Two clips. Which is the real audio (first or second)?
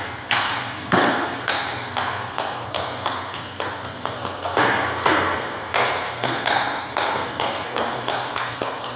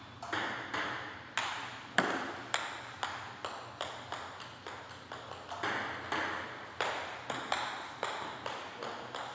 second